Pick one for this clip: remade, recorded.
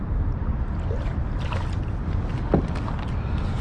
recorded